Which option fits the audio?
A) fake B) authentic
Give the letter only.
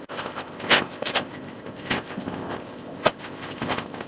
A